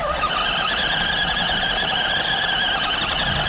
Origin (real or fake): real